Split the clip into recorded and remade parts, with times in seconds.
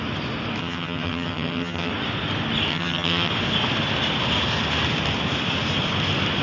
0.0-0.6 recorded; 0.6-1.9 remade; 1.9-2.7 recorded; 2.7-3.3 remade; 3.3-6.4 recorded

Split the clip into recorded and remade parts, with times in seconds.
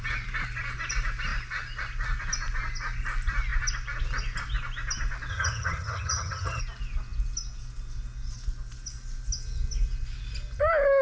0.0-5.3 recorded; 5.3-6.6 remade; 6.6-11.0 recorded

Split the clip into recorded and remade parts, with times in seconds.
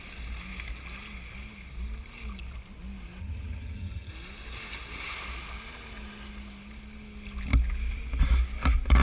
0.0-3.2 recorded; 3.2-4.1 remade; 4.1-9.0 recorded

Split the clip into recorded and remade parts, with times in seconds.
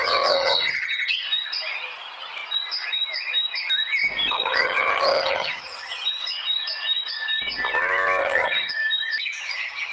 0.0-1.3 remade; 1.3-4.3 recorded; 4.3-6.4 remade; 6.4-8.2 recorded; 8.2-8.8 remade; 8.8-9.4 recorded; 9.4-9.9 remade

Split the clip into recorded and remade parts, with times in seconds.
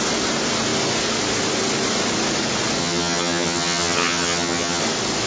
0.0-2.8 recorded; 2.8-4.8 remade; 4.8-5.3 recorded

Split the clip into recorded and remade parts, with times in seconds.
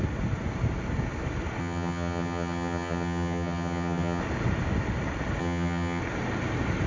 0.0-1.6 recorded; 1.6-4.2 remade; 4.2-5.4 recorded; 5.4-6.0 remade; 6.0-6.9 recorded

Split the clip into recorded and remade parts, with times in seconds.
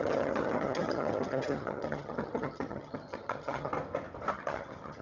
0.0-3.7 remade; 3.7-4.3 recorded; 4.3-5.0 remade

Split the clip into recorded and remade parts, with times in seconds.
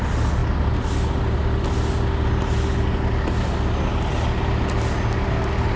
0.0-5.8 recorded